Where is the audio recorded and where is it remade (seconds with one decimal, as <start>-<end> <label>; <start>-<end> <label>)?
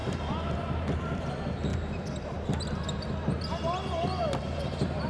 0.0-1.2 remade; 1.2-5.1 recorded